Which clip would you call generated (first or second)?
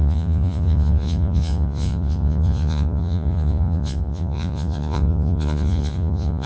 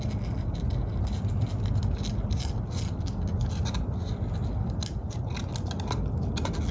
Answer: first